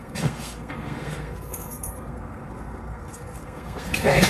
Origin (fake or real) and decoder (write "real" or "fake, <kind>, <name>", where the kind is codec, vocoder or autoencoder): fake, codec, SNAC